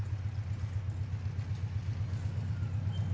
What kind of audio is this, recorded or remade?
recorded